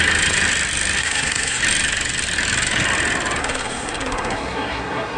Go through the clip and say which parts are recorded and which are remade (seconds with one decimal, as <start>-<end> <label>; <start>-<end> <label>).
0.0-1.0 recorded; 1.0-1.6 remade; 1.6-3.4 recorded; 3.4-5.2 remade